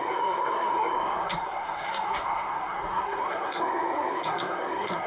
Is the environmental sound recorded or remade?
remade